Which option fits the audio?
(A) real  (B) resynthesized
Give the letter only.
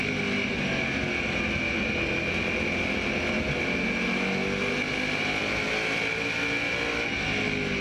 A